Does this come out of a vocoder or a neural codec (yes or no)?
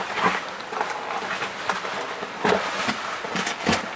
no